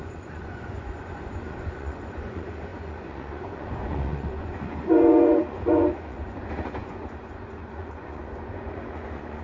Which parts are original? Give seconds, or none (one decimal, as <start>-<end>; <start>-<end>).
none